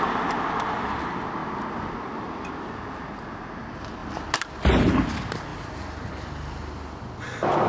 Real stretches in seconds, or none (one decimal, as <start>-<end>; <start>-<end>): 0.0-7.7